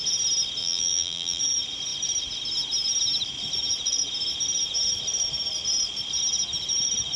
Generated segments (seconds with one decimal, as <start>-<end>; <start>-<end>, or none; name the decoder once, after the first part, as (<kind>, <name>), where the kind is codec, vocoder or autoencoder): 0.6-1.4 (vocoder, BigVGAN v2)

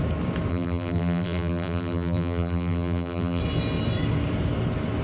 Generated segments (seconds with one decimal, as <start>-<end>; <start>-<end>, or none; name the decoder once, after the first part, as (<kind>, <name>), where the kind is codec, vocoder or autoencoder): 0.5-3.4 (vocoder, BigVGAN v2)